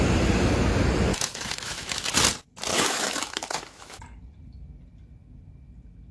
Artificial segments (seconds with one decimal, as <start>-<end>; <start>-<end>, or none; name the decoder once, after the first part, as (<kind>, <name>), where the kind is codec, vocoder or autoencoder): 1.1-2.0 (autoencoder, DAC-VAE); 2.7-4.0